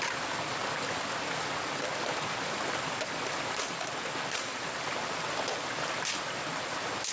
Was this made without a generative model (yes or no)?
yes